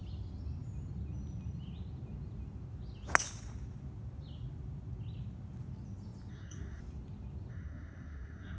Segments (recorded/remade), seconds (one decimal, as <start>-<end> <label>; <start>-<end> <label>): 0.0-6.3 recorded; 6.3-6.8 remade; 6.8-7.5 recorded; 7.5-8.6 remade